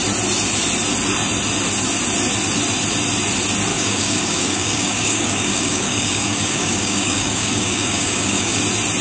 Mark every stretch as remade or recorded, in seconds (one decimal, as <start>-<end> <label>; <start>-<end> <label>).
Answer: 0.0-3.7 recorded; 3.7-8.6 remade; 8.6-9.0 recorded